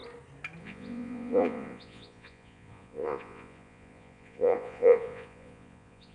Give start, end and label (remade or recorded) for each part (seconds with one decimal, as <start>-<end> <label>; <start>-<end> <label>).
0.0-0.6 recorded; 0.6-6.1 remade